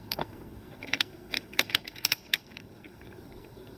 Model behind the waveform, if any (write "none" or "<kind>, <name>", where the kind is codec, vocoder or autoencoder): codec, SNAC